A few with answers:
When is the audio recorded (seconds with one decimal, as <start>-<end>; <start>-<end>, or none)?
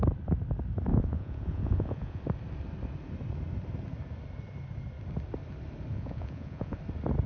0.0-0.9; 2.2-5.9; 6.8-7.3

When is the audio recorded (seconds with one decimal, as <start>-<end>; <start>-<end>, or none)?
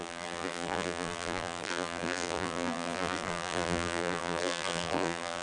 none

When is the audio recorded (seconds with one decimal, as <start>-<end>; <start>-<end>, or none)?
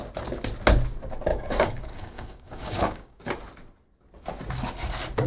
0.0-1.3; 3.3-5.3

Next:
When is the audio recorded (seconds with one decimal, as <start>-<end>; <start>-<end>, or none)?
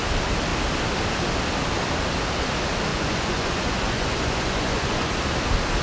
0.0-2.9; 5.1-5.8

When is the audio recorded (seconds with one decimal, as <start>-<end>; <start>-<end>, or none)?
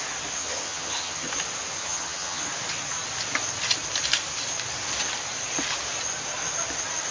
0.0-0.4; 1.3-1.8; 2.4-7.1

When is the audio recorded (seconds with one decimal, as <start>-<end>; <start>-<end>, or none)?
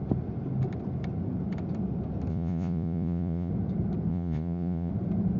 0.0-2.3; 3.5-4.1; 4.9-5.4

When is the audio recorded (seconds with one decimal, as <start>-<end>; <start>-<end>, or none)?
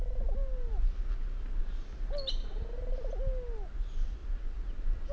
0.0-5.1